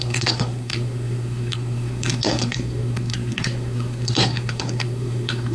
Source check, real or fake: fake